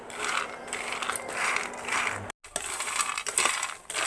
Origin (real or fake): real